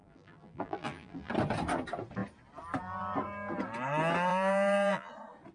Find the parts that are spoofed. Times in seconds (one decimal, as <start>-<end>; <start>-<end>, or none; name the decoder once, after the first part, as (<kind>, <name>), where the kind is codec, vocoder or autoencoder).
0.0-1.3 (vocoder, BigVGAN v2); 4.3-5.1

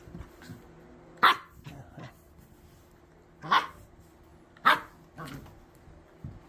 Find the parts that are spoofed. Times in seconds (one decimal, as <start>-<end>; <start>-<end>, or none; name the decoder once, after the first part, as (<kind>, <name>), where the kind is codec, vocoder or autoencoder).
none

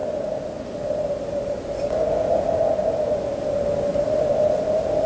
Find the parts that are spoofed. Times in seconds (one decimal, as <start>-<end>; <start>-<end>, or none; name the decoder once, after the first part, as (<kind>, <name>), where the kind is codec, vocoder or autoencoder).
3.9-5.1 (vocoder, BigVGAN v2)

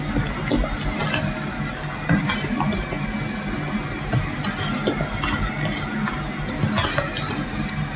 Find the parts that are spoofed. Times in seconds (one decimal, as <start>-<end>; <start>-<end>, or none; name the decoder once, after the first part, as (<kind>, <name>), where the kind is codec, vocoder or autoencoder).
none

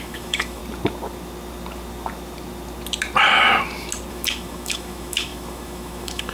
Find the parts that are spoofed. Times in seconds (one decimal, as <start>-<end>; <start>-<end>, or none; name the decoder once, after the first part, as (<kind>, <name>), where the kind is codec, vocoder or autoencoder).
0.0-0.6 (autoencoder, DAC-VAE); 4.1-6.3